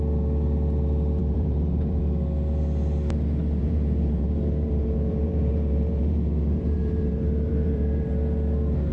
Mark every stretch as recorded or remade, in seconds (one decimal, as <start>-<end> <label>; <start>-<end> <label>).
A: 0.0-1.2 recorded; 1.2-2.0 remade; 2.0-3.6 recorded; 3.6-8.1 remade; 8.1-8.9 recorded